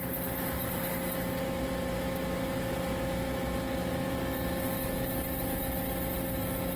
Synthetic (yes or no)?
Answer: no